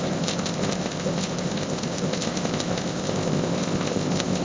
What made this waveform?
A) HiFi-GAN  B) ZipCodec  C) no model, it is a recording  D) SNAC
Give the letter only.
B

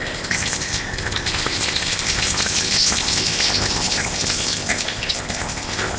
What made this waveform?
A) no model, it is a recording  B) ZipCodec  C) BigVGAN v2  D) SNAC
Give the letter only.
B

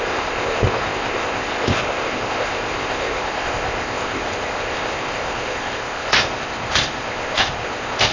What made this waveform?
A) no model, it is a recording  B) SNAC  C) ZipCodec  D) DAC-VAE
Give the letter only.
C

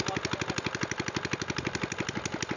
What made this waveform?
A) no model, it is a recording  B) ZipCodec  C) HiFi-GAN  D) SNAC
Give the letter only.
A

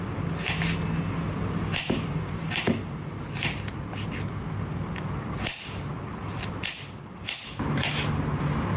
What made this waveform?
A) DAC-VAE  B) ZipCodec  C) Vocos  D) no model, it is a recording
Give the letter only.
D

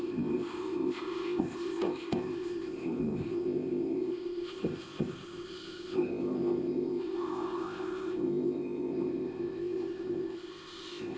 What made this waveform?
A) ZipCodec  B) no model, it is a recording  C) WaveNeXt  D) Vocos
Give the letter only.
A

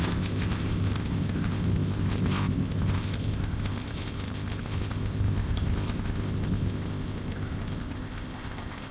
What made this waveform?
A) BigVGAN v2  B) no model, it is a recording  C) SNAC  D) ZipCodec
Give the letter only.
D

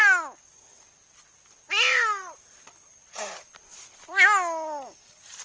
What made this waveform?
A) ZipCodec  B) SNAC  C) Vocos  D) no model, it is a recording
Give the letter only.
D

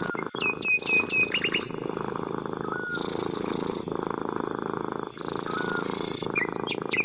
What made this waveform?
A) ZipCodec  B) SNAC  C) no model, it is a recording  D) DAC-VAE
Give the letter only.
C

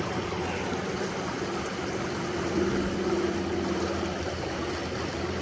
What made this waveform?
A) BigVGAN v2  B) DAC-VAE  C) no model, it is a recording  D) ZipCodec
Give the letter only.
C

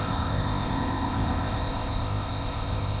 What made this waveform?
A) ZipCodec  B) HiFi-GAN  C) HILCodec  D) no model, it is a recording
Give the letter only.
A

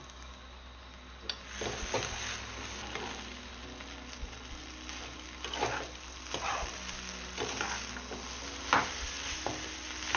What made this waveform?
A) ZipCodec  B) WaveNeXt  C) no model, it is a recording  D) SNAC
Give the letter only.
C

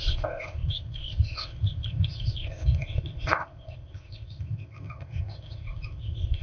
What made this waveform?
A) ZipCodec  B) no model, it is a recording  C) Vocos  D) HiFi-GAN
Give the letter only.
A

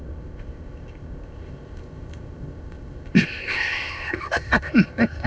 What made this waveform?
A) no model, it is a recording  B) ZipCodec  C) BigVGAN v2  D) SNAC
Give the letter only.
B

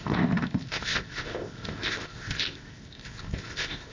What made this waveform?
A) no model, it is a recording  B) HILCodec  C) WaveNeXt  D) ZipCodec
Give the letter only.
D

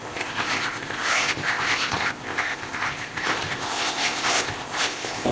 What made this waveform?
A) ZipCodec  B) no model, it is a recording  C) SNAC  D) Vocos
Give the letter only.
A